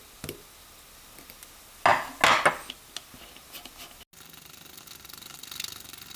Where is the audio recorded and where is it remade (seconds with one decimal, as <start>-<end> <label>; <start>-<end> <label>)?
0.0-6.2 recorded